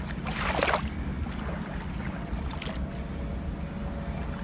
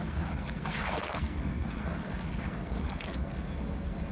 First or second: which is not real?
second